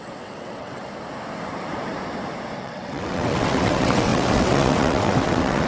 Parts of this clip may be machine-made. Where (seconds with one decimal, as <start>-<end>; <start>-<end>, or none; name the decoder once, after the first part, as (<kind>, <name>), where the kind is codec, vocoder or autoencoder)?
0.0-0.8 (vocoder, WaveNeXt); 2.6-5.7

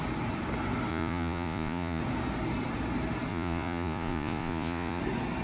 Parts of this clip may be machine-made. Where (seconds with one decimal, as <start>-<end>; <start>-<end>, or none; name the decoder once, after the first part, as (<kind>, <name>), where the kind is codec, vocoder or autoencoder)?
0.9-2.0 (vocoder, Vocos); 3.3-5.0

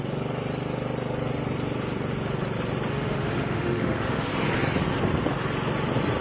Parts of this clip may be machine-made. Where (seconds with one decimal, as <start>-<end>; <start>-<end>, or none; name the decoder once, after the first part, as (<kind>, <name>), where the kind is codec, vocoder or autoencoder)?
2.9-4.3 (autoencoder, DAC-VAE)

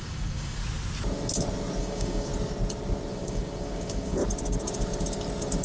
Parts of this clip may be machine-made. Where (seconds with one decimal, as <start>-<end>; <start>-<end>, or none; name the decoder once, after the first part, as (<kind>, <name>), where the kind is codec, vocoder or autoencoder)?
0.0-0.6 (codec, DAC); 1.8-2.3; 3.1-4.2

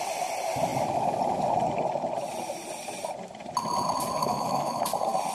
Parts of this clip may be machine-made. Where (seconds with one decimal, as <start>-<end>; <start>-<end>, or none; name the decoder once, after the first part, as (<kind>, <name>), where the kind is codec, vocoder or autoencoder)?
4.2-4.8 (autoencoder, DAC-VAE)

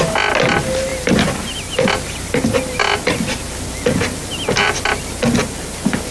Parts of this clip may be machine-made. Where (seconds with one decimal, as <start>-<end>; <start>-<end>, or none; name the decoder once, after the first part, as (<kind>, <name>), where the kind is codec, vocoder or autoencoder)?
none

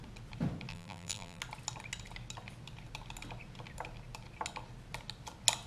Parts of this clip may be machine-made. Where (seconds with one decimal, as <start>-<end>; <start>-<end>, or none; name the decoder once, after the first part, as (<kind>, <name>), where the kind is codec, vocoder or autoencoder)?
0.7-1.4 (vocoder, BigVGAN v2)

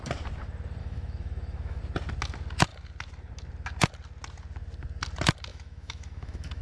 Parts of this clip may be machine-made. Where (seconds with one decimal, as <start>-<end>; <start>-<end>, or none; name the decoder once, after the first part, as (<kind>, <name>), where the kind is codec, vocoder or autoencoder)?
0.8-1.8 (autoencoder, DAC-VAE); 5.5-6.6